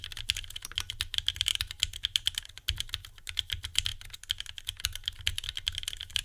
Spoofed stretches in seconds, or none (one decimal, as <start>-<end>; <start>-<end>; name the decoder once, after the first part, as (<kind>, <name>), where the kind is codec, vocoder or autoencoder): 1.1-1.5 (vocoder, BigVGAN v2); 2.4-3.9; 4.4-6.2